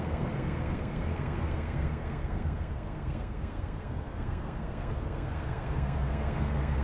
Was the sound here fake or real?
fake